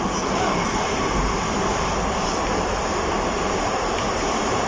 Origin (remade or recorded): recorded